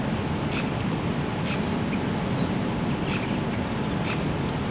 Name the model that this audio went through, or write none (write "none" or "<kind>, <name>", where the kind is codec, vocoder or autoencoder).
none